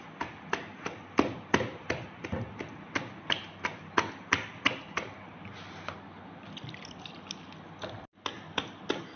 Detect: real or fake real